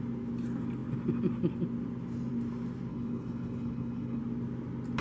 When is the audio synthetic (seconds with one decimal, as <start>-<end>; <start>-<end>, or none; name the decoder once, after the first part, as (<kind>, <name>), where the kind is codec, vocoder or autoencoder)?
2.9-4.2 (codec, HILCodec)